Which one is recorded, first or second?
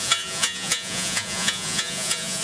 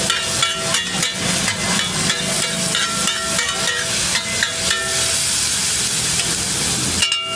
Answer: second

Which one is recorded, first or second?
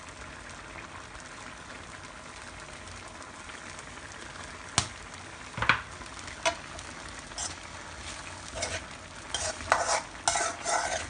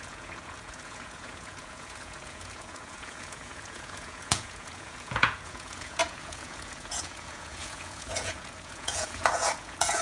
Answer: first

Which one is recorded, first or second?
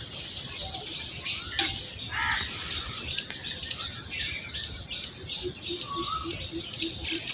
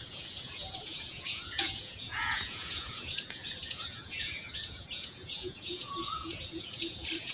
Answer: first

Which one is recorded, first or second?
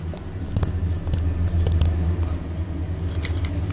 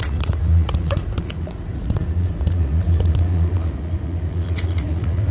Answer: first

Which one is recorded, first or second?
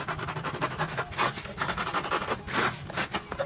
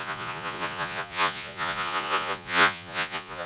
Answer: first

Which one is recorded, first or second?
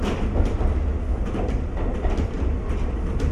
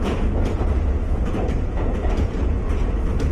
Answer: first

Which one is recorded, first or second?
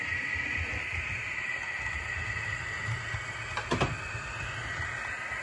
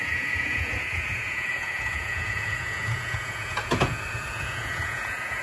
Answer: first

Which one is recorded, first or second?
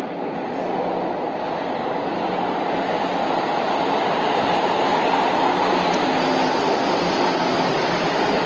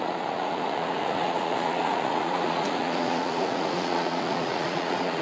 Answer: first